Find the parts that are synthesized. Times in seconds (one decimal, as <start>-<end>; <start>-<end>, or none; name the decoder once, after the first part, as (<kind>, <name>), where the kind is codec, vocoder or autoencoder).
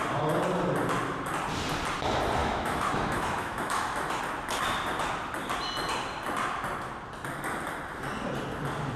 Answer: 2.4-4.2 (autoencoder, DAC-VAE)